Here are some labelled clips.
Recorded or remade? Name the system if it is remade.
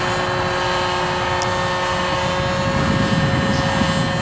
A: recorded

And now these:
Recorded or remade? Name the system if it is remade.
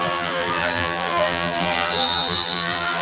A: remade, vocoder, BigVGAN v2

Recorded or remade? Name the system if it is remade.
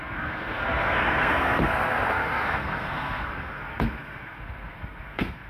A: remade, codec, SNAC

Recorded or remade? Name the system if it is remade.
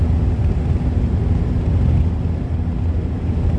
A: recorded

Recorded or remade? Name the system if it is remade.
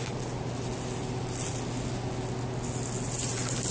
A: recorded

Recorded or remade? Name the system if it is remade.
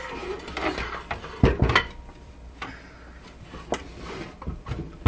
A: recorded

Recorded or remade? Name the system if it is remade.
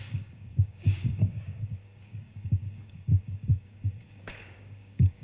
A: remade, codec, DAC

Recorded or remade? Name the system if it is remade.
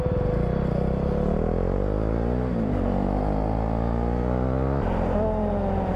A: recorded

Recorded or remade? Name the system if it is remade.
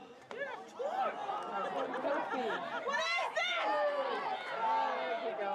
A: recorded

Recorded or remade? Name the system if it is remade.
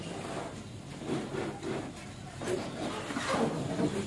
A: recorded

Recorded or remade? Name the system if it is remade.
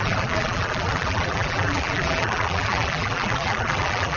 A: remade, vocoder, BigVGAN v2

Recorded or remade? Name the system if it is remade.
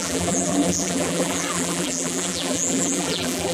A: remade, vocoder, BigVGAN v2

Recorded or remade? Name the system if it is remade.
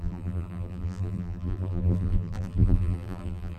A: remade, vocoder, BigVGAN v2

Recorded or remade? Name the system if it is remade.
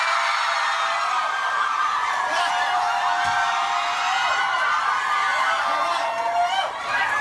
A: remade, vocoder, BigVGAN v2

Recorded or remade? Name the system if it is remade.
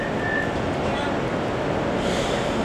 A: recorded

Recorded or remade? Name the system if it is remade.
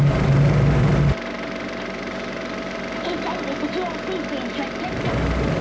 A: recorded